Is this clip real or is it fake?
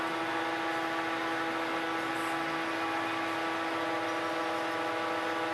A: real